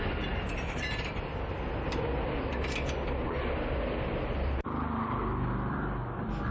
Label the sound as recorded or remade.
recorded